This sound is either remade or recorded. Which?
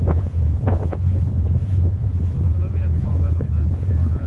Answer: remade